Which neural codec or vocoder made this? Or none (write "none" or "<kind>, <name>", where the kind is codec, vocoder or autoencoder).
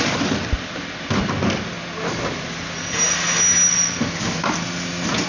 none